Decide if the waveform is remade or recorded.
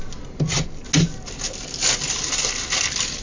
recorded